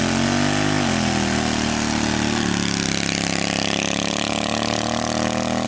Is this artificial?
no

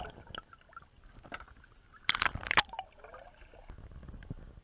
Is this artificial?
no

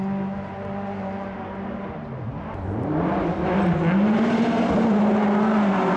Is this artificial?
no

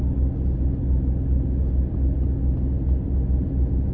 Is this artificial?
no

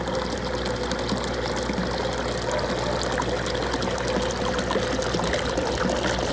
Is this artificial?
no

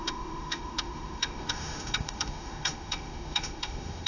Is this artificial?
yes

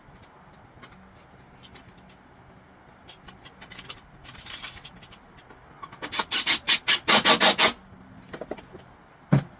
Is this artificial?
no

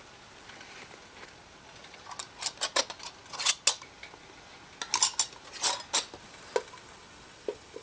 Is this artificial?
no